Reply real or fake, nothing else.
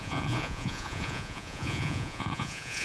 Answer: fake